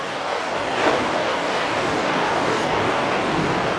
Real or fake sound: fake